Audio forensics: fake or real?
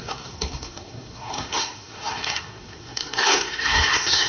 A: fake